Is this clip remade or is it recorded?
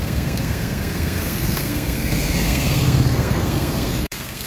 remade